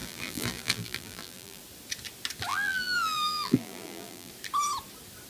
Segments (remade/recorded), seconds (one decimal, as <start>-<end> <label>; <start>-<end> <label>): 0.0-1.6 remade; 1.6-2.5 recorded; 2.5-4.3 remade; 4.3-5.3 recorded